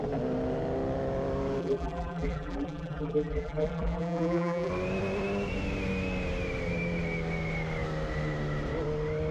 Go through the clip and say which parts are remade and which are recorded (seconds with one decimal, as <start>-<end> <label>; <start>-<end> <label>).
0.0-1.6 recorded; 1.6-4.7 remade; 4.7-9.3 recorded